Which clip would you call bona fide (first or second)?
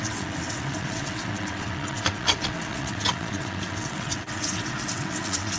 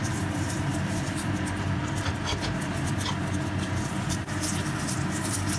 second